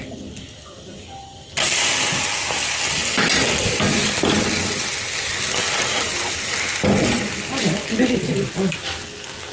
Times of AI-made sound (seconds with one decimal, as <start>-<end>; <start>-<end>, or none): none